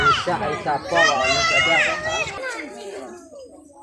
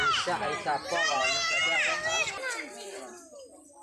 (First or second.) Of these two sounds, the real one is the second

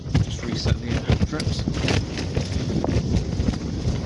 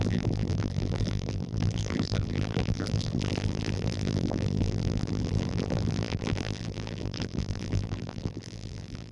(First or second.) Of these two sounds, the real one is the first